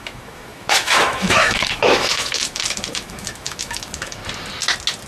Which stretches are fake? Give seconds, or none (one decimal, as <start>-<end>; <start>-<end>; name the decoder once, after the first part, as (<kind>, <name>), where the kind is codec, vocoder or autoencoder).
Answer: 0.0-4.2 (autoencoder, DAC-VAE)